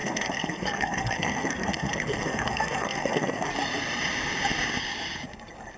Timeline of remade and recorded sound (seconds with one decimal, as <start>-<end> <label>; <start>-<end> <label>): 0.0-3.5 remade; 3.5-5.8 recorded